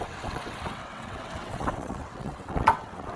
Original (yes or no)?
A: no